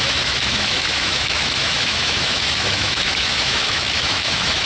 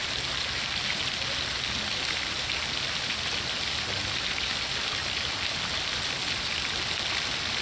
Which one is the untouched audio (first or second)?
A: second